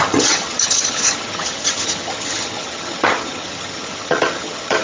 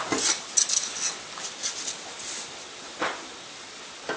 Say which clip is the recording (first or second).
second